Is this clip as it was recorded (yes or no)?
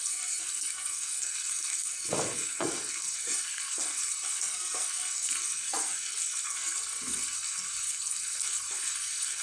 no